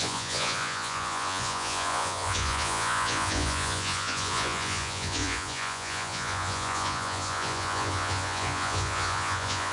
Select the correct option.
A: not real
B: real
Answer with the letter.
A